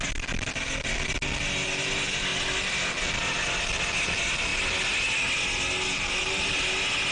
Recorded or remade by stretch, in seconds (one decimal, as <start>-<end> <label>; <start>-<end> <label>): 0.0-7.1 recorded